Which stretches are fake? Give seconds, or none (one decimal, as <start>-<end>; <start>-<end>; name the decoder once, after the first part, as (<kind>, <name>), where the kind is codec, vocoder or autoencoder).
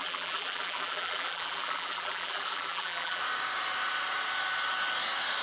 0.0-3.2 (vocoder, BigVGAN v2)